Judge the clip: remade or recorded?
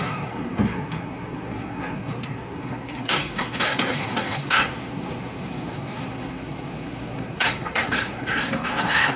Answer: remade